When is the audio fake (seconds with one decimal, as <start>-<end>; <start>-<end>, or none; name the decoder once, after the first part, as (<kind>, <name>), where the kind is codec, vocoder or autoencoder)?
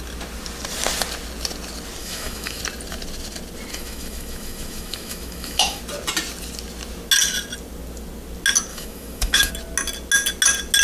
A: 2.0-2.6 (autoencoder, DAC-VAE); 3.7-5.8; 8.7-9.5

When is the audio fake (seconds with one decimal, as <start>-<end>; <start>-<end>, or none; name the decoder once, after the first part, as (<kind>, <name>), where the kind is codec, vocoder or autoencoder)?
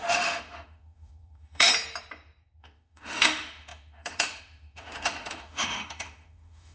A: 0.0-1.7 (autoencoder, DAC-VAE); 2.6-6.7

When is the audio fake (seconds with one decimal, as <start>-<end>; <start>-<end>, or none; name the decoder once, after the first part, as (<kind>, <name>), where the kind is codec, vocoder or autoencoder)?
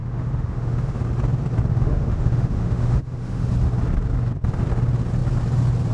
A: 0.0-1.0 (autoencoder, DAC-VAE); 1.7-3.5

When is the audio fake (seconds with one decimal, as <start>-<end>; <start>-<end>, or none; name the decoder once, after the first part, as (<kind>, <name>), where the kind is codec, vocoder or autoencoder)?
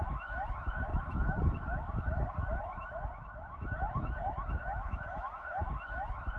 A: 0.0-6.4 (autoencoder, DAC-VAE)